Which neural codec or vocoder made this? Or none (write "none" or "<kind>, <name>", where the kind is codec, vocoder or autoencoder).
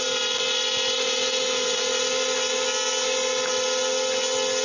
none